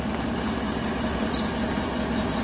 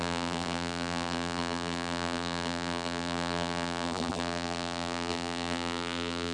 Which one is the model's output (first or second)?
second